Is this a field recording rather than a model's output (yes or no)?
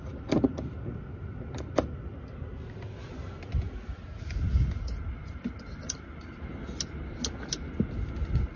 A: yes